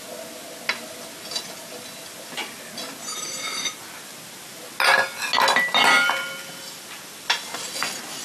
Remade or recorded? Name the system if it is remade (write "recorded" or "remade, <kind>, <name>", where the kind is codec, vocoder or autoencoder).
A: recorded